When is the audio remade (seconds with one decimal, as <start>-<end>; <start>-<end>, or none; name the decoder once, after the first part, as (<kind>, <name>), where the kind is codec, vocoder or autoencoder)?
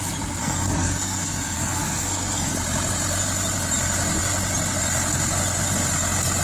0.4-2.5 (codec, SNAC)